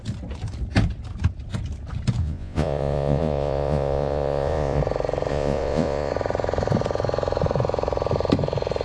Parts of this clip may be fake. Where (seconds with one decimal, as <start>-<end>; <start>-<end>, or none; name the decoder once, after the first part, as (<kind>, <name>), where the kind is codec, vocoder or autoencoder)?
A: 2.2-4.8 (vocoder, Vocos); 5.3-6.1